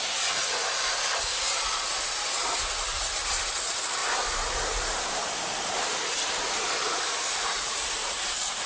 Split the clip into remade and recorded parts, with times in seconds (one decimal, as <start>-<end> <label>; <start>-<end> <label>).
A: 0.0-4.0 recorded; 4.0-8.7 remade